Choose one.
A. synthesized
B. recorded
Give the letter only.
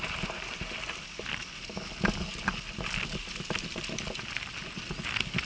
B